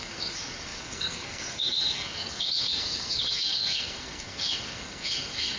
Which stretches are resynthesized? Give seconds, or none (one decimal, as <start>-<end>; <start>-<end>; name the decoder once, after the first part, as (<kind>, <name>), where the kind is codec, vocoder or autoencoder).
0.0-5.6 (codec, SNAC)